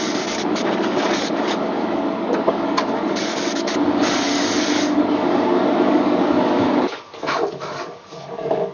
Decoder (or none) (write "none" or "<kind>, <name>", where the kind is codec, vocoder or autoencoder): codec, DAC